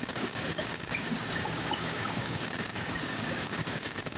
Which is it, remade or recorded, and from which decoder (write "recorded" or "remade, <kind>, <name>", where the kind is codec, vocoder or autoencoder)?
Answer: remade, codec, DAC